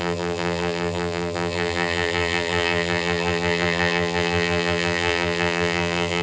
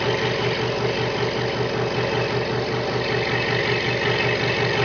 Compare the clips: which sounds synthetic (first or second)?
first